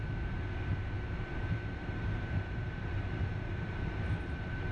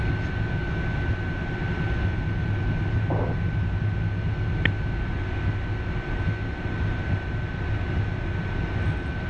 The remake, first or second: first